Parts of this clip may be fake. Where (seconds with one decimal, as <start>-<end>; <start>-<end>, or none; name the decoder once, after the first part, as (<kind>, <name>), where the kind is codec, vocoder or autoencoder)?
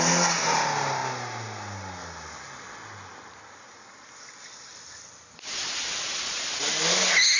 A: none